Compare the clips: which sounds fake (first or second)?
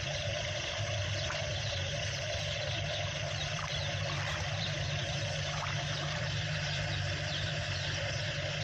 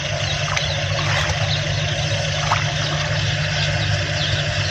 first